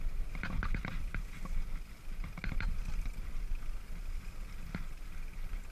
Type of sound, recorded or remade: recorded